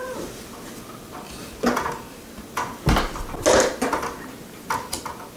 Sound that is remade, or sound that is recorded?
recorded